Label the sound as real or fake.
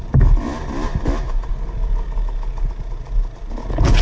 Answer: real